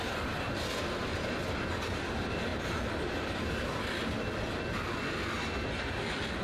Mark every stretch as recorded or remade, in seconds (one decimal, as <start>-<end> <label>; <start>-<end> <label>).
0.0-1.1 recorded; 1.1-2.0 remade; 2.0-2.5 recorded; 2.5-3.4 remade; 3.4-6.4 recorded